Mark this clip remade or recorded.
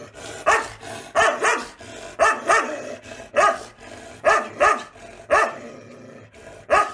recorded